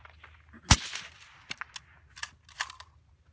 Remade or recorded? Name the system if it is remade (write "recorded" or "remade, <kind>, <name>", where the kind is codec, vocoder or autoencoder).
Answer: recorded